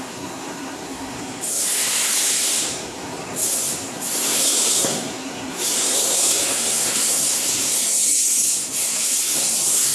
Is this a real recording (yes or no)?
no